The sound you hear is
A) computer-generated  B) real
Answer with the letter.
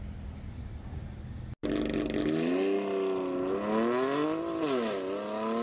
B